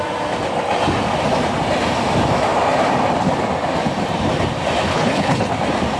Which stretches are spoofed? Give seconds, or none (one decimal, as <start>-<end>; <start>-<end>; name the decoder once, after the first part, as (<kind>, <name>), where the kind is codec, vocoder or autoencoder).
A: 4.9-5.5 (codec, HILCodec)